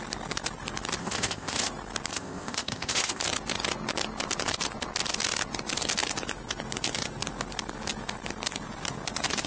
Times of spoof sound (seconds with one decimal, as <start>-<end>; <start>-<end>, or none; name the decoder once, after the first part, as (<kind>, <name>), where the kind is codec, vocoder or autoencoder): 1.0-1.7 (codec, ZipCodec); 2.1-3.2